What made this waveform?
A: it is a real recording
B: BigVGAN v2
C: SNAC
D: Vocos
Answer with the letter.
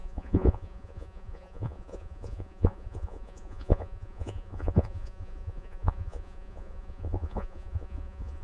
D